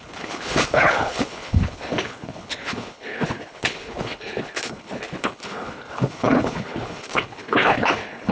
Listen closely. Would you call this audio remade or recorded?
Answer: remade